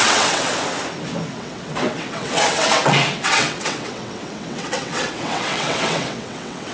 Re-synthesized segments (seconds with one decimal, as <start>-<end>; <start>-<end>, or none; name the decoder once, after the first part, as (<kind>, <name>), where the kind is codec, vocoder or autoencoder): 0.0-0.5 (vocoder, WaveNeXt); 1.3-6.7